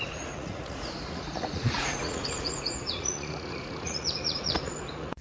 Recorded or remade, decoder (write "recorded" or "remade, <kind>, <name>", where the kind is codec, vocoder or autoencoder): remade, vocoder, Vocos